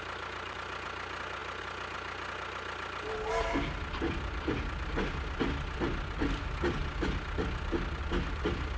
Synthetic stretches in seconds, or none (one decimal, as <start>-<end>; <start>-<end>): none